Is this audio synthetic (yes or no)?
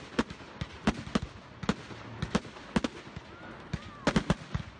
no